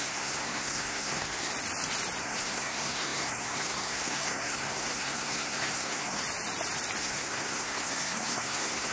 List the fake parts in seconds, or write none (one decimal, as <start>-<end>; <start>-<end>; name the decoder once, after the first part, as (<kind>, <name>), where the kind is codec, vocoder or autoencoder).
0.0-1.5 (codec, SNAC); 2.2-6.2; 7.0-8.9